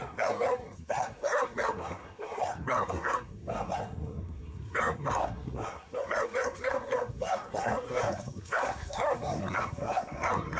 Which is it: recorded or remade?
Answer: remade